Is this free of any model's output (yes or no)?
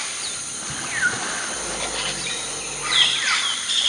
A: yes